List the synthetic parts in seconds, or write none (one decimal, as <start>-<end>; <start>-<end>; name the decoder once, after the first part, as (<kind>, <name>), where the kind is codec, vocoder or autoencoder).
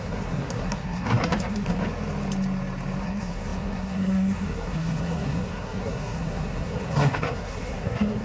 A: 0.0-1.8 (codec, SNAC); 3.0-8.2